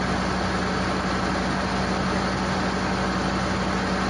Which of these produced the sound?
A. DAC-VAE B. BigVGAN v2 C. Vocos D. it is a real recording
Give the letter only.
D